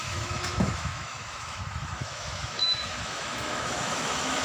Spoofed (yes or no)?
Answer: yes